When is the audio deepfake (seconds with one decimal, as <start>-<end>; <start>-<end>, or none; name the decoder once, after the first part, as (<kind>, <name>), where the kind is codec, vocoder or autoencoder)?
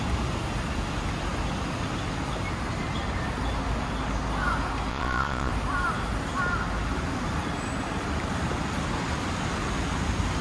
4.9-5.5 (vocoder, Vocos)